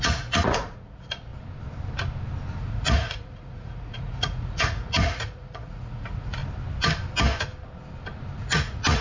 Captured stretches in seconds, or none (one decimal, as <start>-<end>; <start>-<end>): 1.3-2.6; 6.4-8.4